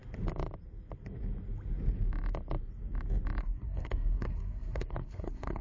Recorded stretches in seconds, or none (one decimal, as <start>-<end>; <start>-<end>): 0.0-3.4